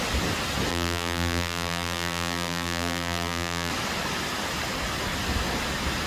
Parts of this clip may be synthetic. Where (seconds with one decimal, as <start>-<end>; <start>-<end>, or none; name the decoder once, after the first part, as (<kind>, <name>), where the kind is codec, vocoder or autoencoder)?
0.7-3.7 (vocoder, BigVGAN v2)